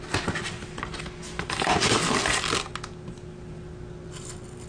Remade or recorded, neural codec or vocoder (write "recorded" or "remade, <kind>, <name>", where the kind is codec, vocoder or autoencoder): recorded